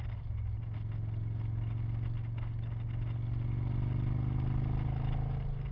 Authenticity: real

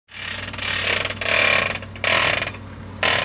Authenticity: real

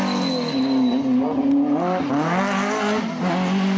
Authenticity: real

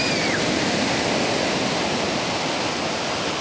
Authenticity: real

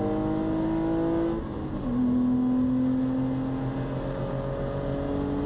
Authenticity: real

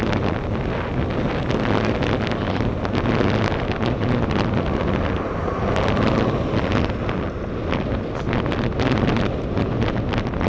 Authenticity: real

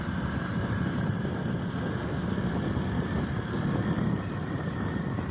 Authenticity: real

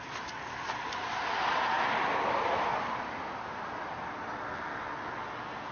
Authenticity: real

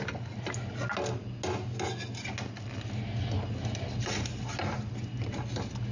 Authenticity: real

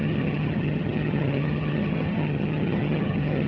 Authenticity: fake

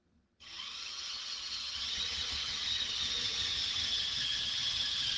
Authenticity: fake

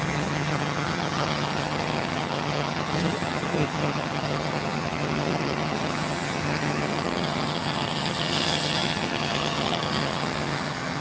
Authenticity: fake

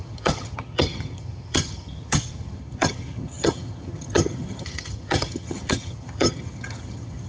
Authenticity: fake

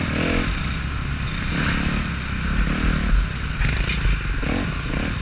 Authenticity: real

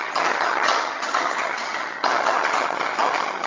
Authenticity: fake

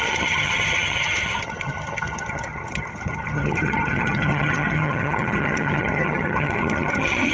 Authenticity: fake